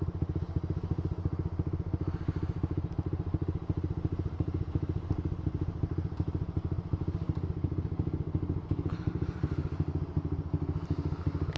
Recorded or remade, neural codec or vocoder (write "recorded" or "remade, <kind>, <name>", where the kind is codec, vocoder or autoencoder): recorded